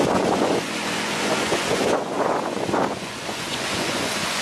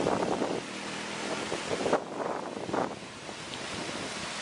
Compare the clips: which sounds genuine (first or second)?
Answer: second